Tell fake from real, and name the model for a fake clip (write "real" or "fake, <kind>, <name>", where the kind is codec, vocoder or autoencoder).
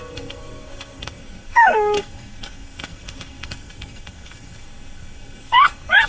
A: fake, codec, SNAC